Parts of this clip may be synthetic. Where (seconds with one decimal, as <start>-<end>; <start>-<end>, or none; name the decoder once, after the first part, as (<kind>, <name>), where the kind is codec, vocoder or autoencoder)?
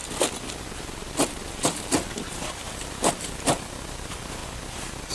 3.1-4.4 (vocoder, BigVGAN v2)